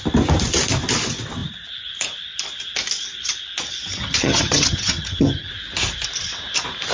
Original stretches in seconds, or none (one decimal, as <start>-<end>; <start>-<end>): 0.0-3.9; 5.5-6.9